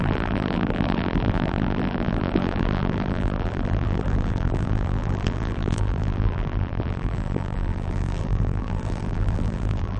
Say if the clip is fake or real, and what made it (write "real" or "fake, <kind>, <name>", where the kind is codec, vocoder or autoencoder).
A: fake, vocoder, BigVGAN v2